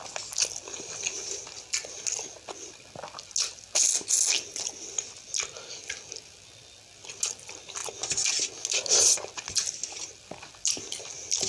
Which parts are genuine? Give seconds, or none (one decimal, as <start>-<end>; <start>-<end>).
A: 0.0-11.5